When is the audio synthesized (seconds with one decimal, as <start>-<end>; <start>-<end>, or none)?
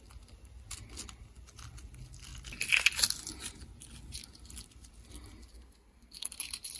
5.5-6.3